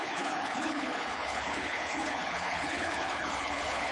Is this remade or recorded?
remade